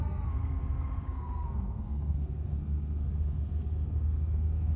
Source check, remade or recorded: remade